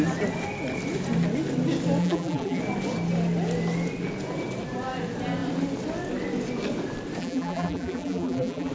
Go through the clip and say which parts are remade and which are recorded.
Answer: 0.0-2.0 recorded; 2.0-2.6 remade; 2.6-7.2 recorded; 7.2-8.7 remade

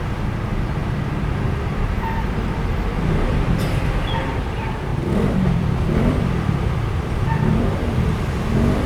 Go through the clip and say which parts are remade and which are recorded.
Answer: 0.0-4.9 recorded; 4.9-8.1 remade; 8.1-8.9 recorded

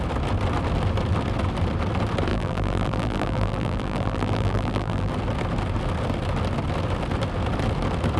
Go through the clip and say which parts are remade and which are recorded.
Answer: 0.0-2.3 recorded; 2.3-5.1 remade; 5.1-8.2 recorded

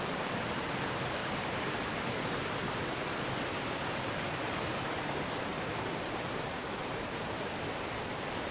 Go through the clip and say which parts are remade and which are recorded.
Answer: 0.0-1.2 remade; 1.2-4.8 recorded; 4.8-8.5 remade